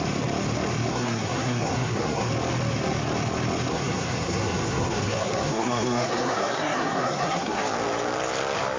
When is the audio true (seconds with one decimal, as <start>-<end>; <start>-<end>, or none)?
0.0-0.9; 2.3-3.7; 7.6-8.8